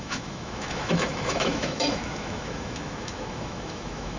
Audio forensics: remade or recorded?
remade